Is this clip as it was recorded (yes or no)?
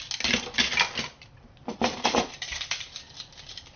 yes